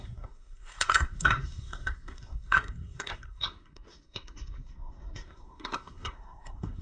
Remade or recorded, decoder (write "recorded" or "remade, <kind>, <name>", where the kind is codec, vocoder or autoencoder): remade, codec, SNAC